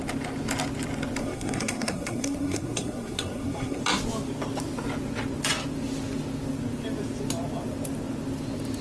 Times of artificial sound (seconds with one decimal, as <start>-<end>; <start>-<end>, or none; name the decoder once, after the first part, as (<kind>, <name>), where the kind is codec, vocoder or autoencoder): 1.2-3.8 (codec, SNAC)